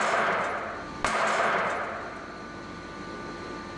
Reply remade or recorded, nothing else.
recorded